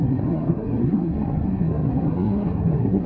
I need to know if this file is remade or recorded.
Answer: remade